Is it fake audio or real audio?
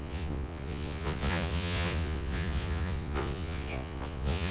fake